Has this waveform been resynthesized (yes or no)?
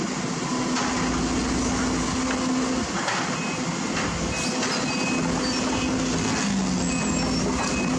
no